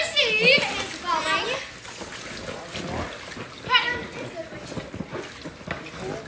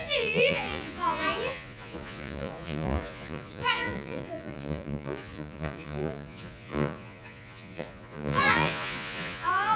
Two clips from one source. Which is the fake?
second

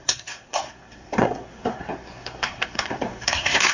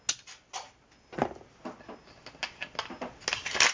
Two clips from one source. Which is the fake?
first